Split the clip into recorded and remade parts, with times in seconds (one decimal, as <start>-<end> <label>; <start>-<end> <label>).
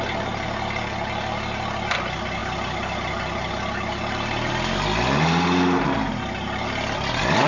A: 0.0-7.5 recorded